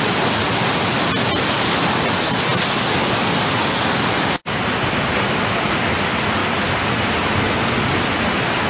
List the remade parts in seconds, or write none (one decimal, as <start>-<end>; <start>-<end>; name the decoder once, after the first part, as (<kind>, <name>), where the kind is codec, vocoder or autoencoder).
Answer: none